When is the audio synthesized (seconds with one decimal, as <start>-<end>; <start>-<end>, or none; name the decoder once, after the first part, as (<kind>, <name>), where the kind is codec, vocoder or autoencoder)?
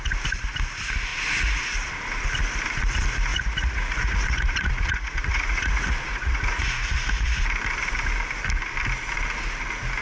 1.1-1.9 (vocoder, Vocos); 3.3-7.4